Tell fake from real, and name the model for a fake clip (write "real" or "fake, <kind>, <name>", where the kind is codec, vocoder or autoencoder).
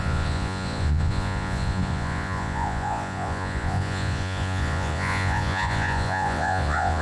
fake, vocoder, Vocos